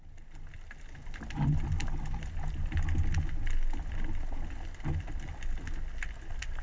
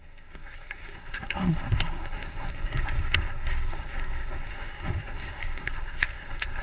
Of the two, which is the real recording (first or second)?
first